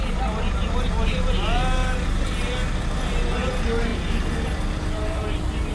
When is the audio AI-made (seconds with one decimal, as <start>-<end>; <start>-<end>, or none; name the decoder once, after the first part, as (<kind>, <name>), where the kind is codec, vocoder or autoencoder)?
none